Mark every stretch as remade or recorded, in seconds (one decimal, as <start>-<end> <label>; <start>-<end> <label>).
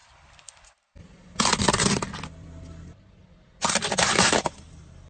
0.0-1.6 remade; 1.6-3.2 recorded; 3.2-4.0 remade; 4.0-5.1 recorded